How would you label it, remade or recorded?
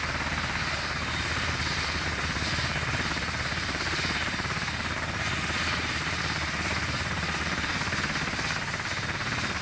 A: remade